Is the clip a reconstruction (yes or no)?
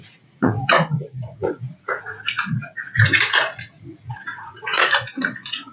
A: yes